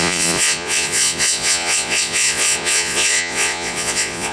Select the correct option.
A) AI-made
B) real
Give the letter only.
A